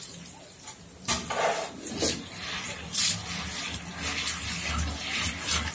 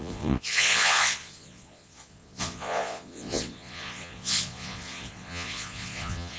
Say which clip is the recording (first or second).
first